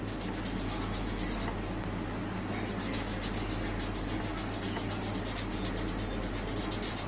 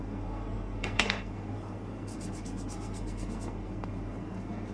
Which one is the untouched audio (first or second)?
first